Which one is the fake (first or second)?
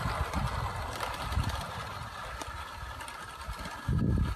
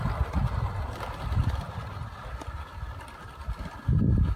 second